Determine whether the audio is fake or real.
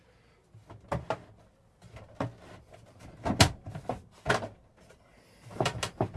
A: real